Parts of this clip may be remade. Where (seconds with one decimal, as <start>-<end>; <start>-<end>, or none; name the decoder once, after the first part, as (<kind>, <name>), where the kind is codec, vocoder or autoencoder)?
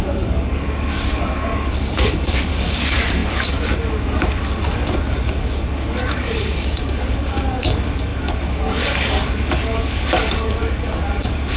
0.0-11.6 (codec, DAC)